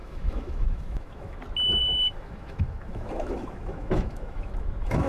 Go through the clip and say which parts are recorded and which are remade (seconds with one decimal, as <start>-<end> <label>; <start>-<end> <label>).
0.0-1.4 remade; 1.4-1.8 recorded; 1.8-5.1 remade